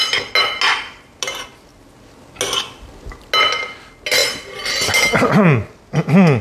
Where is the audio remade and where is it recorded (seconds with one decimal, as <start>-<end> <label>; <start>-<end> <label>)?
0.0-6.4 recorded